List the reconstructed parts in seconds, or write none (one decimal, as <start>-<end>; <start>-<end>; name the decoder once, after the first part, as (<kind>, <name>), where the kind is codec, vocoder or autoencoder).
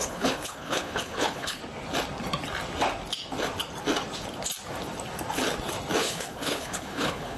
0.0-1.6 (codec, HILCodec); 6.0-7.4